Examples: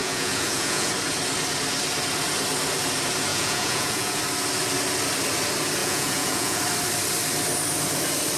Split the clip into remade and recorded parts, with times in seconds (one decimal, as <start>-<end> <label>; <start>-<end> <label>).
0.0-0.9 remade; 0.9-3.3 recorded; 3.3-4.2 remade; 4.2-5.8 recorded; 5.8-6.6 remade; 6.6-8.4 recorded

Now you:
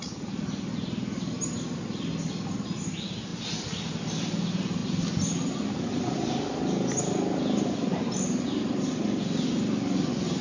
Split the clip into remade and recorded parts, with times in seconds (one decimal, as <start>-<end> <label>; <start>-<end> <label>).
0.0-10.4 recorded

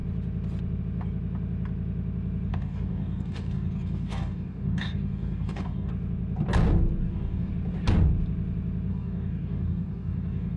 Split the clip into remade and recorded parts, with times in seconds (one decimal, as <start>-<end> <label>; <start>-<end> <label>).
0.0-2.5 recorded; 2.5-5.9 remade; 5.9-7.0 recorded; 7.0-7.5 remade; 7.5-8.9 recorded; 8.9-10.6 remade

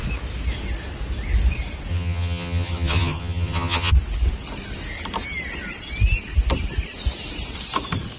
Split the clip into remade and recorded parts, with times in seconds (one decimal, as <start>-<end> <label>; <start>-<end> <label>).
0.0-1.9 recorded; 1.9-3.9 remade; 3.9-8.2 recorded

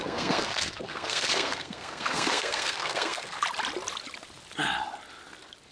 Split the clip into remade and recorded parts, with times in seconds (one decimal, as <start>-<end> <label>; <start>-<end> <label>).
0.0-3.4 remade; 3.4-5.7 recorded

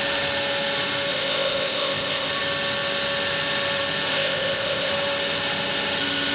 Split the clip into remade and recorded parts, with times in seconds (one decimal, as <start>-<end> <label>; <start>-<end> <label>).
0.0-1.1 recorded; 1.1-2.3 remade; 2.3-4.1 recorded; 4.1-4.9 remade; 4.9-6.3 recorded

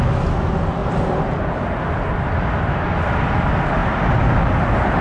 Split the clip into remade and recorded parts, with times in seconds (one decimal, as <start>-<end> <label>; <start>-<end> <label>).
0.0-0.8 recorded; 0.8-1.4 remade; 1.4-5.0 recorded